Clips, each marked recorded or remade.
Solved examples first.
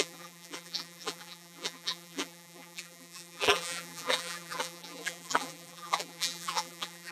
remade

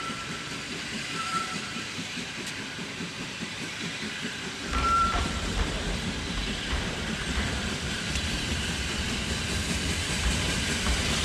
remade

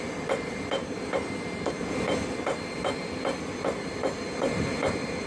remade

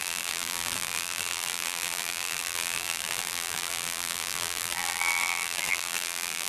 remade